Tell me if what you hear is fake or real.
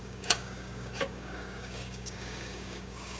fake